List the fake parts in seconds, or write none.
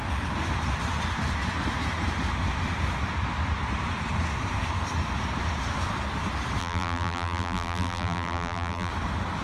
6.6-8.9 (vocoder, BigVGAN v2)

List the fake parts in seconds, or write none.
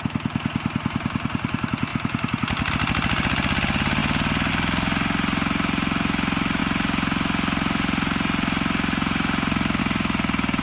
4.0-4.5 (vocoder, BigVGAN v2)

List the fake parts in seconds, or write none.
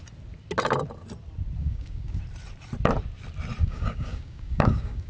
1.6-2.2 (codec, DAC); 3.6-5.1